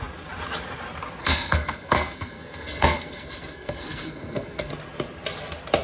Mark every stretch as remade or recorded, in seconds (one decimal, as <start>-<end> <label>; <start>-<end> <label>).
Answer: 0.0-1.2 recorded; 1.2-4.7 remade; 4.7-5.8 recorded